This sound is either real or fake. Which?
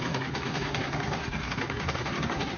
fake